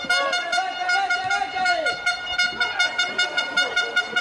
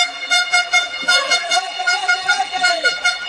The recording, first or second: first